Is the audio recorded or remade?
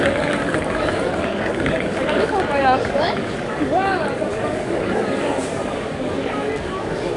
remade